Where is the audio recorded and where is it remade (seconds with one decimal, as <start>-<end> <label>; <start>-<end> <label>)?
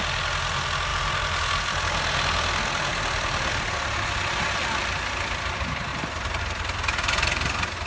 0.0-0.9 recorded; 0.9-1.6 remade; 1.6-2.9 recorded; 2.9-3.5 remade; 3.5-5.9 recorded; 5.9-6.4 remade; 6.4-7.9 recorded